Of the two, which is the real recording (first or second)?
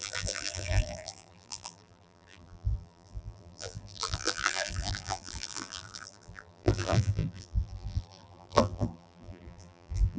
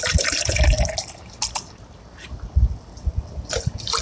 second